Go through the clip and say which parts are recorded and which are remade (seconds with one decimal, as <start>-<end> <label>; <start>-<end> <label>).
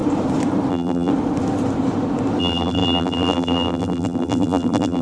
0.0-0.7 recorded; 0.7-1.1 remade; 1.1-2.4 recorded; 2.4-5.0 remade